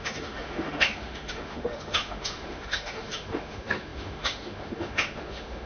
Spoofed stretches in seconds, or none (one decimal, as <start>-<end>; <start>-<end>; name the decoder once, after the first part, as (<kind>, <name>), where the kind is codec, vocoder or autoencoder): 0.0-5.7 (autoencoder, DAC-VAE)